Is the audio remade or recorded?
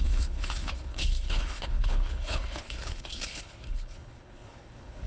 remade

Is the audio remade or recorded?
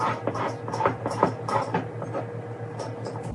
recorded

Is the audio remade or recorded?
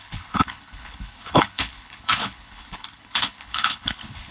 remade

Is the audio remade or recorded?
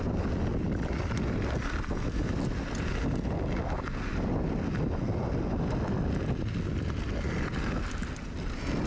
recorded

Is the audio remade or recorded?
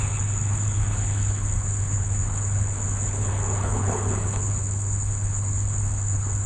remade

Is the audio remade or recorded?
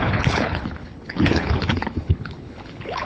remade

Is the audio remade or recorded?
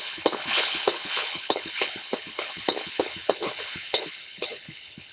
remade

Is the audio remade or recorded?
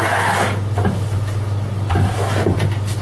recorded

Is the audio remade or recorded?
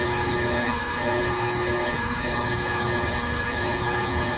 remade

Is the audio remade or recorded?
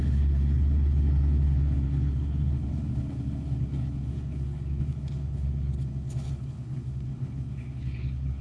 remade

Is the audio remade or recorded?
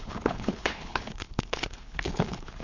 remade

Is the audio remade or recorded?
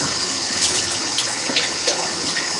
remade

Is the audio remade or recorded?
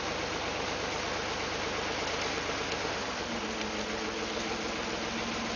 recorded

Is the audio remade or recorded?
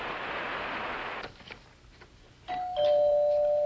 recorded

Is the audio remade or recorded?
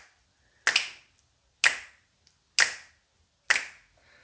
recorded